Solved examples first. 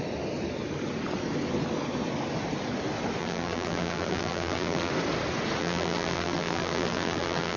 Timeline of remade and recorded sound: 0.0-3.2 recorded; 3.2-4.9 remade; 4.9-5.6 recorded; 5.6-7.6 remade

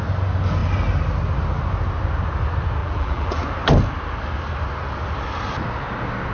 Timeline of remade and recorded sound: 0.0-2.8 recorded; 2.8-3.4 remade; 3.4-6.3 recorded

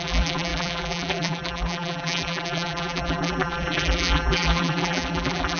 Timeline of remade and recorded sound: 0.0-5.6 remade